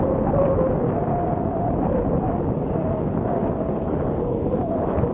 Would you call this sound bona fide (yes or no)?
yes